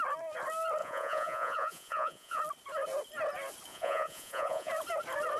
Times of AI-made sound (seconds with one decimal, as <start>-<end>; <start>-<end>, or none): 0.8-2.4; 3.7-4.7